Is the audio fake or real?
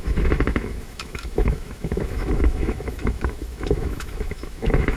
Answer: fake